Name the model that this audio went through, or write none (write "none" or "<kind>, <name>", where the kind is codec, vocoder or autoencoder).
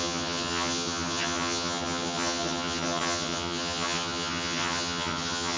vocoder, HiFi-GAN